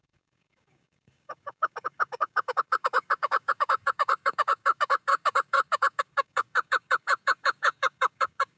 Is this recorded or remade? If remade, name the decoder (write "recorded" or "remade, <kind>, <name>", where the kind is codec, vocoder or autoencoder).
remade, codec, DAC